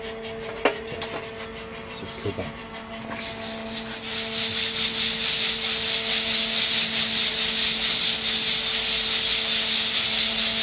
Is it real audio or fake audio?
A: real